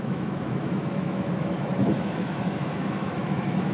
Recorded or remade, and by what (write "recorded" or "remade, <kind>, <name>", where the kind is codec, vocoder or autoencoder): remade, autoencoder, DAC-VAE